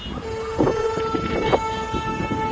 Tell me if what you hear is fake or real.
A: real